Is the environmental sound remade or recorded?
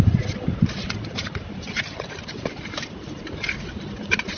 remade